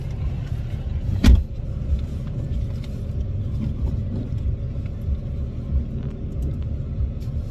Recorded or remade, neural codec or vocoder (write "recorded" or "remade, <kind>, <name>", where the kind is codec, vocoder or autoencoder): recorded